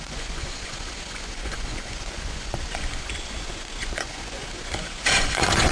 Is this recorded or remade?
remade